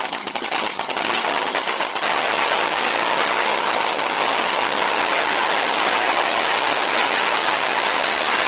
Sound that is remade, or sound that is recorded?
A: remade